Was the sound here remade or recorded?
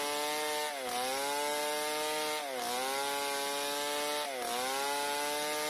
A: recorded